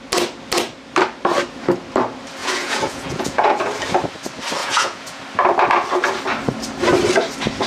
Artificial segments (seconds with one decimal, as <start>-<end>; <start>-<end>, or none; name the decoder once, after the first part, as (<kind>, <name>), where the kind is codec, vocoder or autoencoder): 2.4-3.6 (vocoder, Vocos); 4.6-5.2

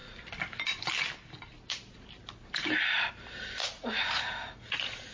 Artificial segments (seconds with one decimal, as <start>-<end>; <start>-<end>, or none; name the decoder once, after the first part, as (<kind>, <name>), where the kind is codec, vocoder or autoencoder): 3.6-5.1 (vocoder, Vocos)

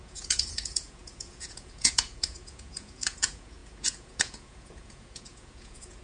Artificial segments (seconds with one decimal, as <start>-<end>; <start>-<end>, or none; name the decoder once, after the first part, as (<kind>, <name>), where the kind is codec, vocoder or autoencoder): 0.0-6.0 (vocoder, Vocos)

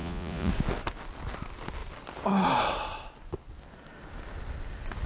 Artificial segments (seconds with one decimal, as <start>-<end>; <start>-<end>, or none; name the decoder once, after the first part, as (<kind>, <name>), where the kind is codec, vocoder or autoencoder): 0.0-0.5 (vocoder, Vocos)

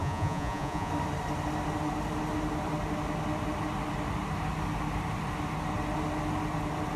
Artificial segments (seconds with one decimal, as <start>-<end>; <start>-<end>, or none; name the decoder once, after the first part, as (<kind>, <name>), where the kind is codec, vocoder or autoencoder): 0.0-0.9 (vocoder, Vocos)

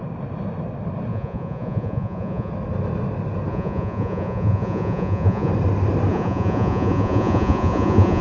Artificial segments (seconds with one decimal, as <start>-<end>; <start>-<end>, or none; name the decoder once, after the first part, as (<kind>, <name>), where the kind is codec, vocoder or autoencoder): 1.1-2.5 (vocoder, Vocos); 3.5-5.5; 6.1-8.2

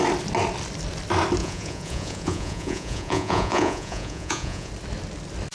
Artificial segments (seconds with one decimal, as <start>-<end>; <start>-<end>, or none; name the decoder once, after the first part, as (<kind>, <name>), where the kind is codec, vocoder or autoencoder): 1.4-4.7 (vocoder, Vocos)

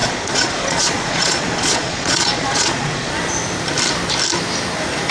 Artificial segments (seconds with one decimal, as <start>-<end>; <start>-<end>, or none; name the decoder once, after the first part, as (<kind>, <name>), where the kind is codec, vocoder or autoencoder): 0.0-3.1 (vocoder, Vocos)